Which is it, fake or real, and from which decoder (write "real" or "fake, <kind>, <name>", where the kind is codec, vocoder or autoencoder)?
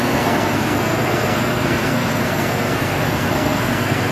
fake, codec, SNAC